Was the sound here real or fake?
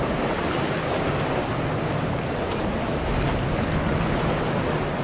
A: real